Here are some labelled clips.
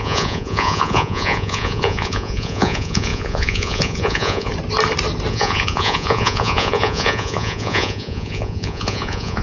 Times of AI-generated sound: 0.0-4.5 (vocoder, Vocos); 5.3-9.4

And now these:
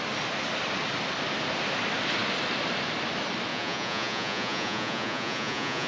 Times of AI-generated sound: 3.5-5.9 (vocoder, Vocos)